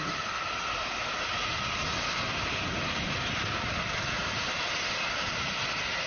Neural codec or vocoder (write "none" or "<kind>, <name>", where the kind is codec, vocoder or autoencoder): none